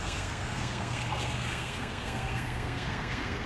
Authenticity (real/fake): fake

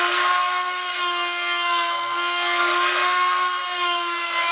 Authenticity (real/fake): fake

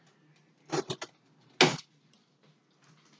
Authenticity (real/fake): real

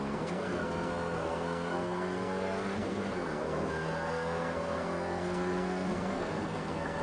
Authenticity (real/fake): fake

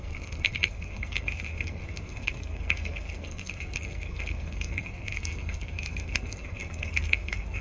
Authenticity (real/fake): fake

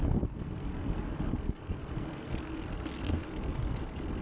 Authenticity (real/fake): fake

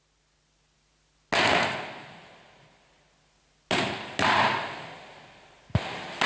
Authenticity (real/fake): real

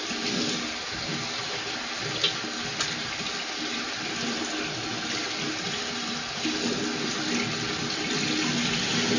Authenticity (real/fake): real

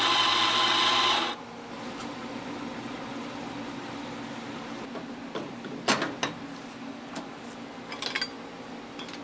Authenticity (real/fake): real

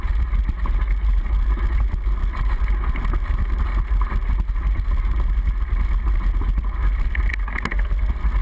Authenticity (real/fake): real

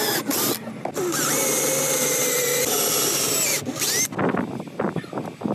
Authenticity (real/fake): real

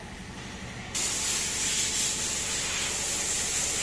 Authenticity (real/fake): real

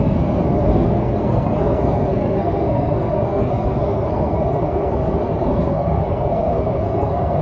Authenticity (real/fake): fake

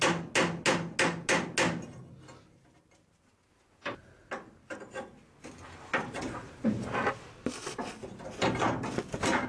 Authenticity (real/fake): real